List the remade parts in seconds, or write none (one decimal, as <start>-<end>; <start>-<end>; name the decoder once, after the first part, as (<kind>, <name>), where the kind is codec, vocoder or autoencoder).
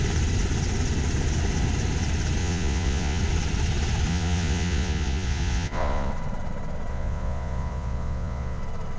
2.4-3.2 (vocoder, Vocos); 4.1-6.1; 6.9-8.6